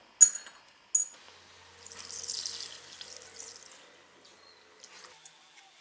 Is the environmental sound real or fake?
real